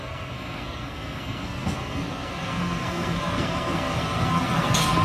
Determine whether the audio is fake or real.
fake